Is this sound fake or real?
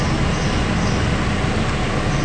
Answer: real